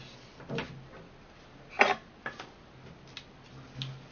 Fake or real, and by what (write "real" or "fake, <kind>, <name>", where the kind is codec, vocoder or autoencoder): real